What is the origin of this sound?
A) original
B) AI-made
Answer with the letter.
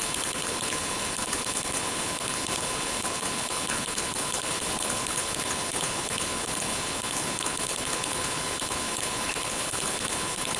B